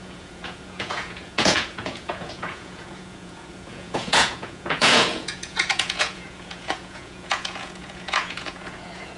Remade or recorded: remade